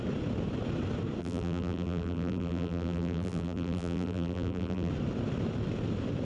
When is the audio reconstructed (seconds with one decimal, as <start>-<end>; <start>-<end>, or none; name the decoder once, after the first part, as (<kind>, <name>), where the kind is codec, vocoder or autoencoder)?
1.2-4.9 (vocoder, BigVGAN v2)